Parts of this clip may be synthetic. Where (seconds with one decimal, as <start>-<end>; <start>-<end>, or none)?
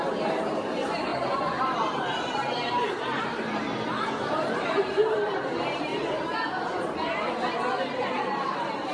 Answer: 0.0-1.1; 1.6-5.9; 7.9-8.9